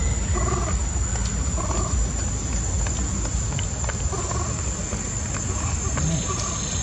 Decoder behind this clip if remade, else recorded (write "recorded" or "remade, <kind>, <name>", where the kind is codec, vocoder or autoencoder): recorded